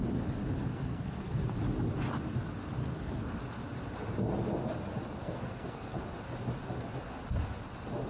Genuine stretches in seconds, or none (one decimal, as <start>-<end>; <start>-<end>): 0.0-0.6; 1.3-2.8; 3.4-5.2; 6.0-8.1